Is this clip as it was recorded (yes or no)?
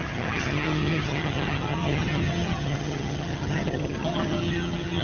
no